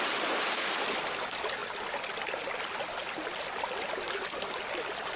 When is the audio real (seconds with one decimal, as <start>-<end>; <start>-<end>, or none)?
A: 0.0-5.2